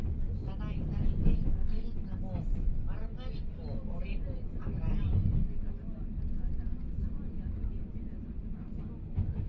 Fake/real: real